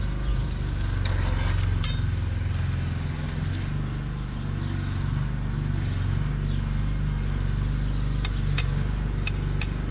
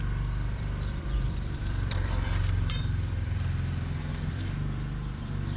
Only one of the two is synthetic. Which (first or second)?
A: second